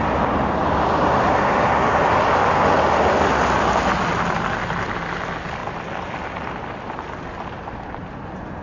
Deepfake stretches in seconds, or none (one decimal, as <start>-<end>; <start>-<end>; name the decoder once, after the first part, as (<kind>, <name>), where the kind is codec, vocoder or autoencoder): none